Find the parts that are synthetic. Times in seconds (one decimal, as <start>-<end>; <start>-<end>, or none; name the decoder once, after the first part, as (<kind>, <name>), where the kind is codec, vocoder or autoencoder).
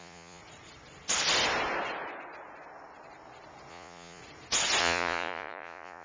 0.0-0.4 (vocoder, Vocos); 3.7-4.2; 4.8-6.0